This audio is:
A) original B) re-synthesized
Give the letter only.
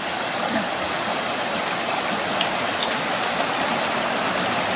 B